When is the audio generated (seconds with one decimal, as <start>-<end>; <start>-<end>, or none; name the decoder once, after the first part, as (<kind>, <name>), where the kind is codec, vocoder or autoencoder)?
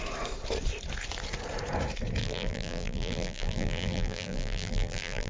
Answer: 2.2-5.3 (vocoder, BigVGAN v2)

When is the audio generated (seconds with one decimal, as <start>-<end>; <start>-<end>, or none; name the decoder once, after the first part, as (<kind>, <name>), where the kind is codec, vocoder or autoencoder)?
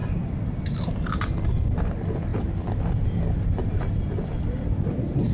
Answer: none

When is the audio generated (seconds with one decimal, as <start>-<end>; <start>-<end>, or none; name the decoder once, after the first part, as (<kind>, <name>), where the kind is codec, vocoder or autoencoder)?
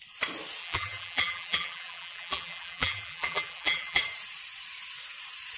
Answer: 0.6-4.0 (vocoder, BigVGAN v2)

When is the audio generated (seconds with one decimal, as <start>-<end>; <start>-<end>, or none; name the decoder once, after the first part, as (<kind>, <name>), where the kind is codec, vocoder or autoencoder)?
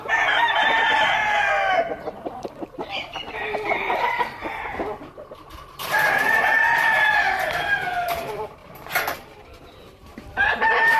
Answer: 0.0-1.2 (vocoder, BigVGAN v2); 2.1-4.4; 8.1-8.6; 9.6-11.0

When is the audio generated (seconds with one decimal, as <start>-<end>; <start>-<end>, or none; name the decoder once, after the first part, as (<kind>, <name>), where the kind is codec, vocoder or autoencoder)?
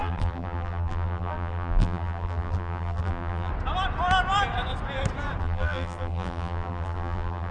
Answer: 0.0-3.5 (vocoder, BigVGAN v2); 5.4-7.5